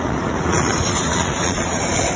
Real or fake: fake